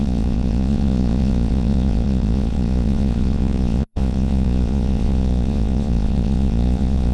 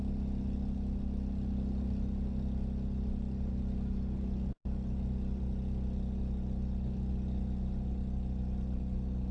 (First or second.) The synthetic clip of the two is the first